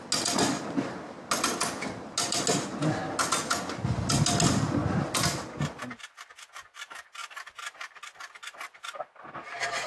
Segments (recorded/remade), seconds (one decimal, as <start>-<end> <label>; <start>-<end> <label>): 0.0-4.8 recorded; 4.8-6.8 remade; 6.8-9.4 recorded; 9.4-9.9 remade